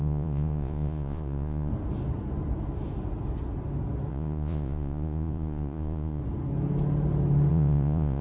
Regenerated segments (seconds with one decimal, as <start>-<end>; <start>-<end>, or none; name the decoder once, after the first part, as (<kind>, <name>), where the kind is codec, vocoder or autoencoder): 0.0-1.7 (vocoder, Vocos); 4.1-6.2; 7.5-8.2